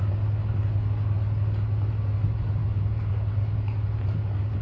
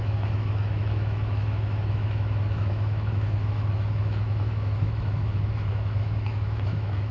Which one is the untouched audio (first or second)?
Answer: first